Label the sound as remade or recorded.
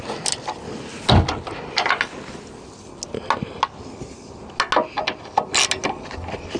recorded